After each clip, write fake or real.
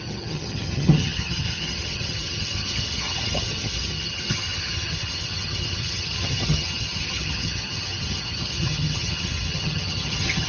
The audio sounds fake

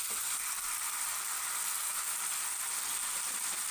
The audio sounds real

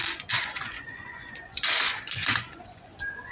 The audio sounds fake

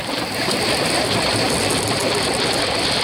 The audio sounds real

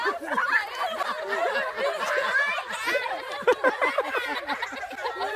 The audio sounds real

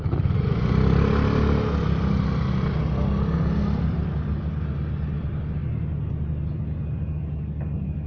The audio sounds real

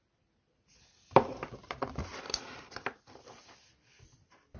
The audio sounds real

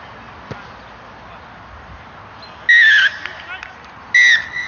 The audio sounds real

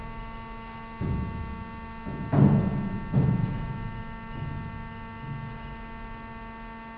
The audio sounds real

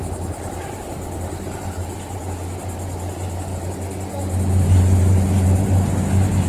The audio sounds real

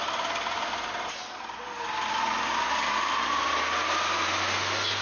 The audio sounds real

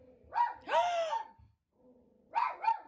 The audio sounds real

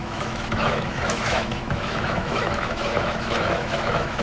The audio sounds fake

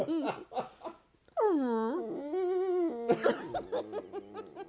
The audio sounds real